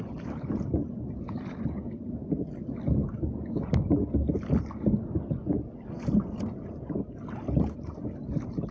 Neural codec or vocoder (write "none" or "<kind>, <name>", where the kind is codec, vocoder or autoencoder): none